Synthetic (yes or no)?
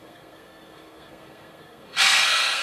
yes